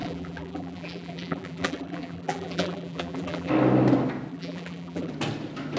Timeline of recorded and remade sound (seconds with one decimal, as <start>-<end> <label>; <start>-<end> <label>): 0.0-3.5 remade; 3.5-4.3 recorded; 4.3-5.1 remade; 5.1-5.8 recorded